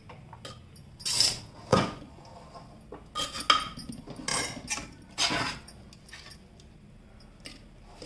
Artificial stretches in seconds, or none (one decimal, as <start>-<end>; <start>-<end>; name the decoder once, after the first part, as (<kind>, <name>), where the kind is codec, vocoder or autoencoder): 1.7-2.2 (vocoder, Vocos)

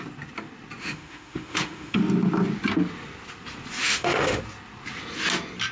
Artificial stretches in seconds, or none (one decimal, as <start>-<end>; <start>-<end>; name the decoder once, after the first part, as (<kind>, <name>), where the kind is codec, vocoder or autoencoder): 0.8-2.0 (autoencoder, DAC-VAE); 3.8-4.4

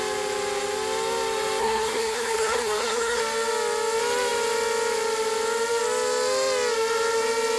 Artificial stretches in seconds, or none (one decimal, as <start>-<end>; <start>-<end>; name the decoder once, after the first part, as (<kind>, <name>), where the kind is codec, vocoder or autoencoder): 1.6-3.2 (codec, SNAC)

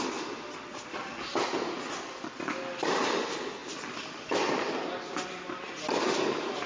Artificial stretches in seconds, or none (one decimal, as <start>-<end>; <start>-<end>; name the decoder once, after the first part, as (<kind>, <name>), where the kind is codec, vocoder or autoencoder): none

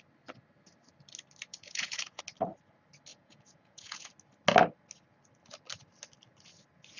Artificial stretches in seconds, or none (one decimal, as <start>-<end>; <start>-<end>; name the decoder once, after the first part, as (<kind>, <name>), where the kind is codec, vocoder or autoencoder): 1.5-2.2 (vocoder, Vocos); 3.1-4.1

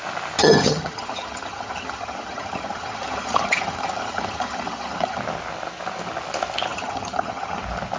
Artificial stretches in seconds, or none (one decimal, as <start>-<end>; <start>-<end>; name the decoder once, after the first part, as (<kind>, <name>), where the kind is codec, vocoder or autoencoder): 0.4-5.2 (vocoder, HiFi-GAN); 6.7-7.6